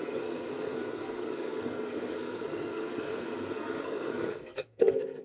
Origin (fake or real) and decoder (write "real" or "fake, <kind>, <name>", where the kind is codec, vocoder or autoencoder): fake, codec, SNAC